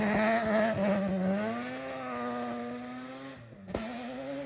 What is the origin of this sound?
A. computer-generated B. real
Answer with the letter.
B